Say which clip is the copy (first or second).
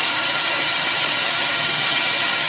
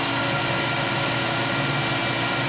first